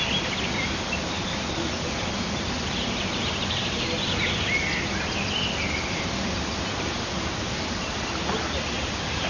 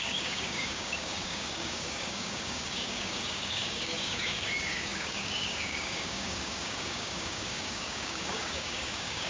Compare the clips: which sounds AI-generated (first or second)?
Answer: second